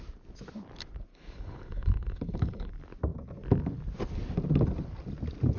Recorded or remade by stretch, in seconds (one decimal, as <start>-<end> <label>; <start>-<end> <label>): 0.0-1.1 recorded; 1.1-2.7 remade; 2.7-5.6 recorded